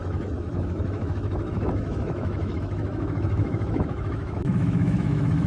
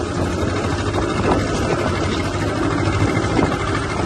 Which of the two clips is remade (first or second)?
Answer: first